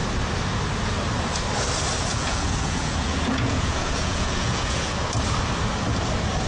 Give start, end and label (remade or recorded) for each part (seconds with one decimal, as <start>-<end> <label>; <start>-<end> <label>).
0.0-2.1 recorded; 2.1-5.1 remade; 5.1-6.5 recorded